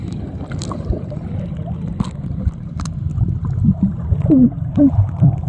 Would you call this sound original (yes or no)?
yes